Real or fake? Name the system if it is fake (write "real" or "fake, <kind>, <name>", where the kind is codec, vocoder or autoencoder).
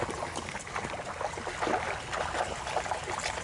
real